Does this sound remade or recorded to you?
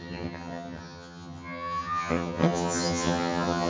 remade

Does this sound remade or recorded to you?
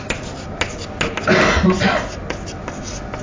recorded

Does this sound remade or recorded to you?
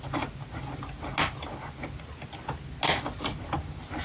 recorded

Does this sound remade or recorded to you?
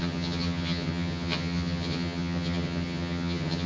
remade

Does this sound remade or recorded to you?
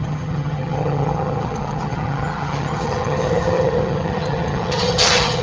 remade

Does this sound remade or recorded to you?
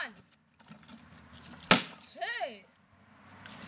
recorded